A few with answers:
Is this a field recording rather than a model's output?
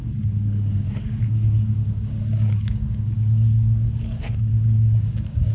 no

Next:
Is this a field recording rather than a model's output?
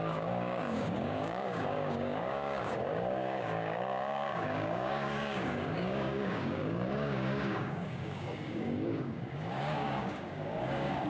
no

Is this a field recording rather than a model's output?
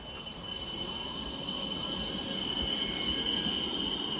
yes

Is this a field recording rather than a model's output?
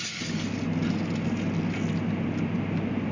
yes